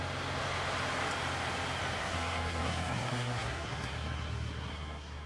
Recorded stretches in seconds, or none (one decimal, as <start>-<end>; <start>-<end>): 0.0-2.0